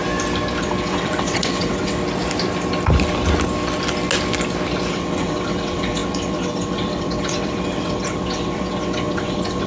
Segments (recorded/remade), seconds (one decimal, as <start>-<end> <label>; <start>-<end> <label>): 0.0-0.6 recorded; 0.6-2.0 remade; 2.0-4.9 recorded; 4.9-9.7 remade